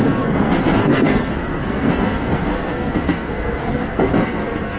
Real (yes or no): no